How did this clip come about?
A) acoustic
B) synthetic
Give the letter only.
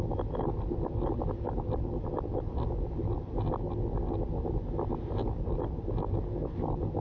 A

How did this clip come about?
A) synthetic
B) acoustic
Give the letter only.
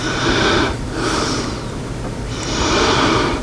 A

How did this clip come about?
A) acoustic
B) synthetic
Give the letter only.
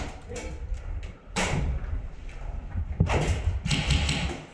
A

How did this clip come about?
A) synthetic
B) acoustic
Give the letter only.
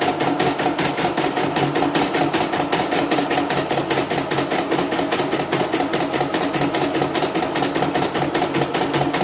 B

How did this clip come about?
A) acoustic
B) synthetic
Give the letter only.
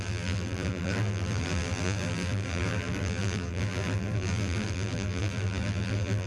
B